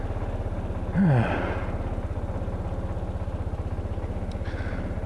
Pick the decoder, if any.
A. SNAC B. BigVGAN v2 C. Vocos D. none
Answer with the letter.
D